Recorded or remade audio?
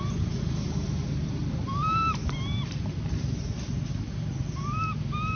recorded